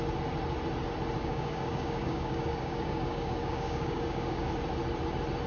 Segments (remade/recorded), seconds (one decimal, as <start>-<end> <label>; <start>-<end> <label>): 0.0-1.2 recorded; 1.2-4.5 remade; 4.5-5.5 recorded